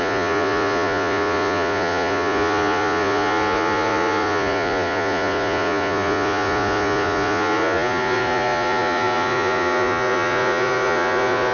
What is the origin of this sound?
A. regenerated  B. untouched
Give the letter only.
A